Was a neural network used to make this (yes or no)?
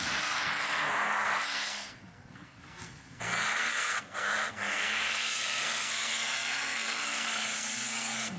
yes